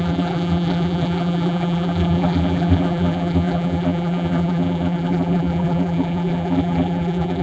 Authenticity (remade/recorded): remade